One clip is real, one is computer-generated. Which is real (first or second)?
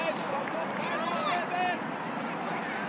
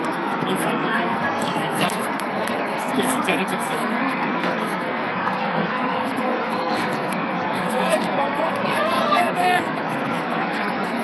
first